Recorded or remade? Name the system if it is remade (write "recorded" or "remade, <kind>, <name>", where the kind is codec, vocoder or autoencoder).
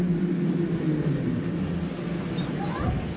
recorded